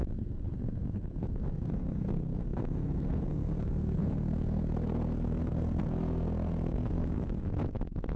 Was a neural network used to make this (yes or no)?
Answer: yes